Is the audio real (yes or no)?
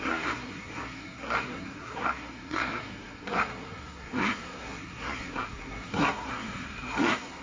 no